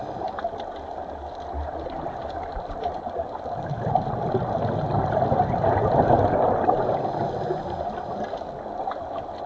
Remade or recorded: recorded